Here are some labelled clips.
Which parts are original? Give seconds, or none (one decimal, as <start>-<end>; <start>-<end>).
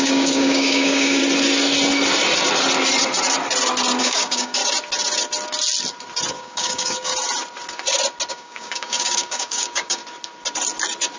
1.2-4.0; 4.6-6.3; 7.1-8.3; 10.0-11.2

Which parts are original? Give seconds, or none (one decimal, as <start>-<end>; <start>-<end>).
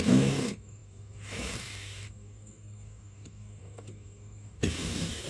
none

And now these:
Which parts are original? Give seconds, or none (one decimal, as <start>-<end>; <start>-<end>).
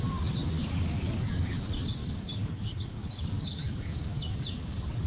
0.0-0.6; 1.5-2.0